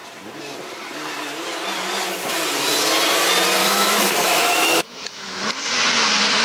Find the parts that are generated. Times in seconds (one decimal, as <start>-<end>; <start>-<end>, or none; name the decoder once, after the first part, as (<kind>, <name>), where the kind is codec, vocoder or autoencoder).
3.6-5.5 (autoencoder, DAC-VAE)